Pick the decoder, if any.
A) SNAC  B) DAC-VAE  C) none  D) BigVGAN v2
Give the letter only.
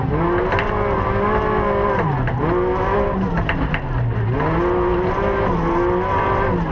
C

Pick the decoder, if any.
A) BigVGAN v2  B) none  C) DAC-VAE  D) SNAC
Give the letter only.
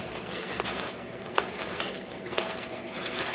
D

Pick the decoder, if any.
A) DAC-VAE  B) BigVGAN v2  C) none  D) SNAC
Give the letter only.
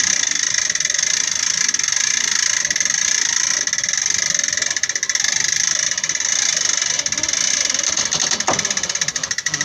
C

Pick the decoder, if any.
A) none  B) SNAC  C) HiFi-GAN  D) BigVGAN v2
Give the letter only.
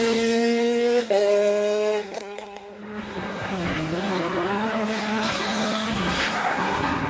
B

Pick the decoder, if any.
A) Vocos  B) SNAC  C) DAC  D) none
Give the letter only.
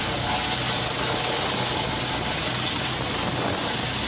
D